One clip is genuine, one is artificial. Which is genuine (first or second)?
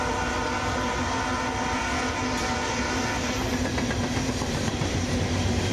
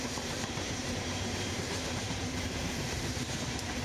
first